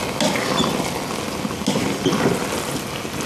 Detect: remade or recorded recorded